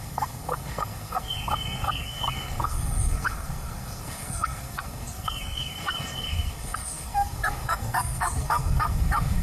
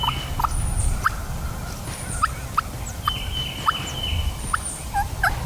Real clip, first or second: second